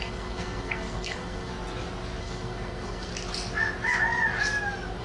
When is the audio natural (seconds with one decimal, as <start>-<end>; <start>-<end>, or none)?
1.5-2.2; 3.1-5.0